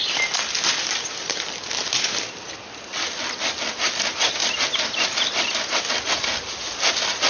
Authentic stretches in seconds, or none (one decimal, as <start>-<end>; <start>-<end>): 0.0-7.3